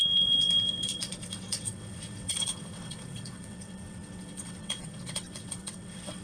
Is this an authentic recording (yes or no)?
no